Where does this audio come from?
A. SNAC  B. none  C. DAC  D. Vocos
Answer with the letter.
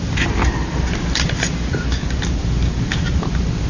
B